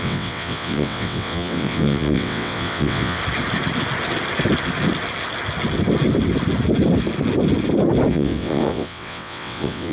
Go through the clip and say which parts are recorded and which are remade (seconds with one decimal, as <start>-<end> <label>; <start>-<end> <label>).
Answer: 0.0-3.2 remade; 3.2-8.1 recorded; 8.1-9.9 remade